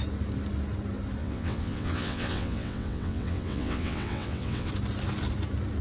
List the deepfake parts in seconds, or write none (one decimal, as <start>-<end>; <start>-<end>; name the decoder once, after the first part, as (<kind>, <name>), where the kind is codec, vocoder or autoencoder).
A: 1.2-4.7 (vocoder, WaveNeXt)